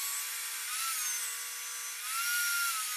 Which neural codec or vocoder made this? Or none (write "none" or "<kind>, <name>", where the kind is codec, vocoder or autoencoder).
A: none